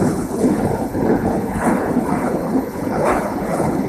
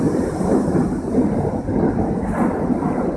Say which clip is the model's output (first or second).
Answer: first